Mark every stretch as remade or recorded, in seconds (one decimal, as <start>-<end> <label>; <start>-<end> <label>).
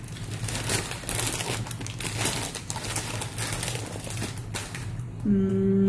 0.0-5.9 recorded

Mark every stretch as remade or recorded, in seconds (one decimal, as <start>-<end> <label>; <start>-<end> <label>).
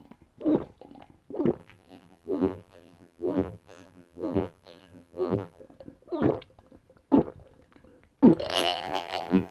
0.0-1.6 recorded; 1.6-5.6 remade; 5.6-8.5 recorded; 8.5-9.5 remade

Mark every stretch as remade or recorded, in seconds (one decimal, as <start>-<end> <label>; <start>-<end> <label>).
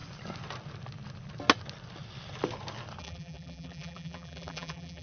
0.0-3.0 recorded; 3.0-5.0 remade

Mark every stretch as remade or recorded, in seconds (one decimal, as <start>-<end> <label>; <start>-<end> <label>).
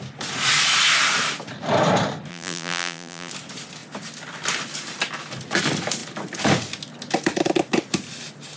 0.0-2.3 recorded; 2.3-3.3 remade; 3.3-8.6 recorded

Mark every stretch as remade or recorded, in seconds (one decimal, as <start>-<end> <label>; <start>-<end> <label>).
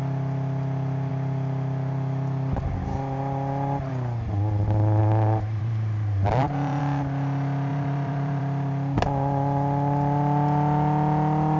0.0-5.0 recorded; 5.0-6.8 remade; 6.8-7.7 recorded; 7.7-8.4 remade; 8.4-11.6 recorded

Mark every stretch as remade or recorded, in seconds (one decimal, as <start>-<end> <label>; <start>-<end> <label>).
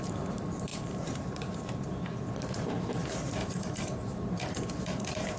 0.0-5.4 remade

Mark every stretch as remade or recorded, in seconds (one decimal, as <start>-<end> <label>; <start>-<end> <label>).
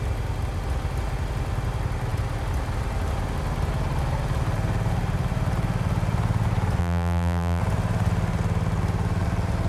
0.0-6.8 recorded; 6.8-7.6 remade; 7.6-9.7 recorded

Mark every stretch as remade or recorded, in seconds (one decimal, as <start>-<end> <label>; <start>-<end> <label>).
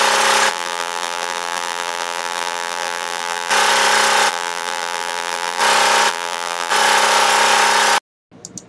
0.0-0.5 recorded; 0.5-3.5 remade; 3.5-4.3 recorded; 4.3-5.6 remade; 5.6-6.1 recorded; 6.1-6.7 remade; 6.7-8.7 recorded